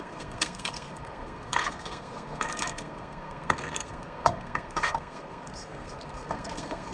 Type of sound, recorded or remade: remade